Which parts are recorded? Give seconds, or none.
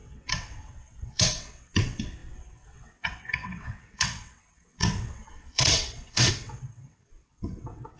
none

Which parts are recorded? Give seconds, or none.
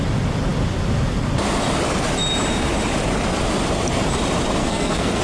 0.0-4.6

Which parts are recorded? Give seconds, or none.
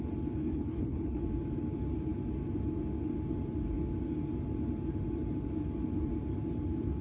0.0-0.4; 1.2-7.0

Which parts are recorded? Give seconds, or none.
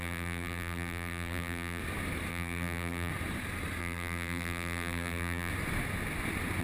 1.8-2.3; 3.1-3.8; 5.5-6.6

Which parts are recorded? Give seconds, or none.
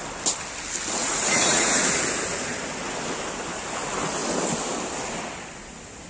0.0-1.0; 1.8-6.1